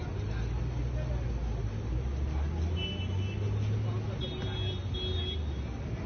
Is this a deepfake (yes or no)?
no